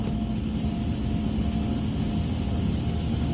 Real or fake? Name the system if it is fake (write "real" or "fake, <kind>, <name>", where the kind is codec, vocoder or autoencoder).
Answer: real